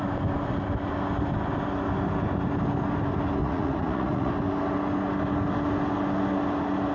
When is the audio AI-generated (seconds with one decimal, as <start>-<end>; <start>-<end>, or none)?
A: 3.4-4.3